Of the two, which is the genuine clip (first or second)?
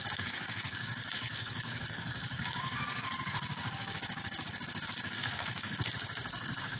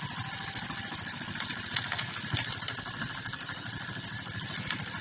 second